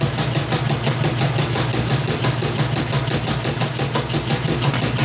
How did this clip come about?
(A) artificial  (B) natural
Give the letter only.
B